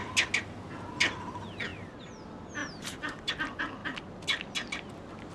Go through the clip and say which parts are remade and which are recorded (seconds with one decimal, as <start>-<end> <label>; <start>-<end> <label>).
0.0-2.6 recorded; 2.6-3.3 remade; 3.3-5.3 recorded